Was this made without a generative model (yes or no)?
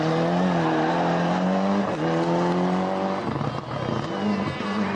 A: yes